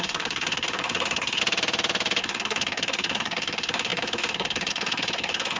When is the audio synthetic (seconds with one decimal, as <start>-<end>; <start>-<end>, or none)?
0.0-1.4; 2.2-5.6